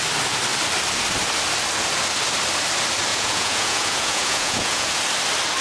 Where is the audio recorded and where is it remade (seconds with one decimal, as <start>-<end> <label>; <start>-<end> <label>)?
0.0-3.1 recorded; 3.1-5.0 remade; 5.0-5.6 recorded